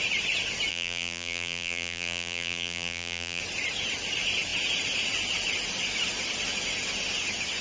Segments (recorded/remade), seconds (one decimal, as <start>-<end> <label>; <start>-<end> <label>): 0.0-0.7 recorded; 0.7-3.4 remade; 3.4-7.6 recorded